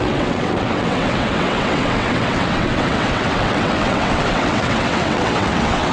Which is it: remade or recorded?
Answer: remade